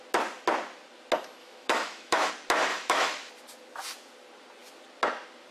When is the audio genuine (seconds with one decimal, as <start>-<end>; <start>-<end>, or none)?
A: 0.0-1.4; 2.3-2.7; 3.3-5.5